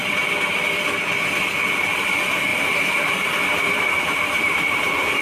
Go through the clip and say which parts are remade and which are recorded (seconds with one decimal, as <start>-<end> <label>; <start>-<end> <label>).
0.0-2.5 recorded; 2.5-5.2 remade